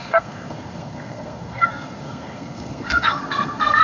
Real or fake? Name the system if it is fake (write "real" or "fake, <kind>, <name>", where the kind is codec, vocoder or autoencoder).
fake, codec, SNAC